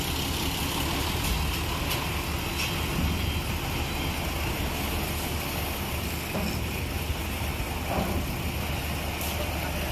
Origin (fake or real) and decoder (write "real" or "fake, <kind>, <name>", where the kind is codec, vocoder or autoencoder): real